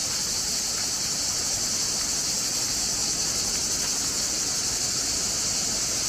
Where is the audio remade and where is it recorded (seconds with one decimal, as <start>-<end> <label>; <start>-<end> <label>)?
0.0-6.1 recorded